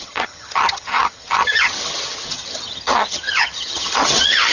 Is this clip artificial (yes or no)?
yes